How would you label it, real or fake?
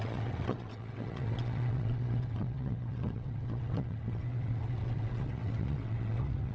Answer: fake